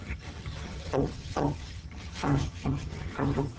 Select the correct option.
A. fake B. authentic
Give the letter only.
A